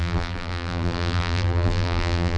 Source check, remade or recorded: remade